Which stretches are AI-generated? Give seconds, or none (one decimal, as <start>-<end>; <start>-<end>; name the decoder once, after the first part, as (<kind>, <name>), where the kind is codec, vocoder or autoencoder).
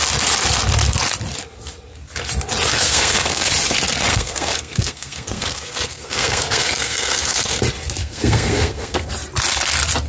2.7-3.5 (codec, SNAC); 4.1-7.6; 8.0-9.1